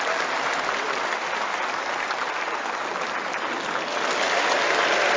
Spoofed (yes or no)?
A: no